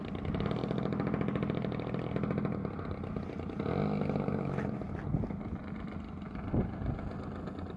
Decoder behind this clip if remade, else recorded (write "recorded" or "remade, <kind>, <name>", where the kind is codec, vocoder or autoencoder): recorded